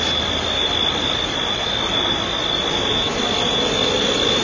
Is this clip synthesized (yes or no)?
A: no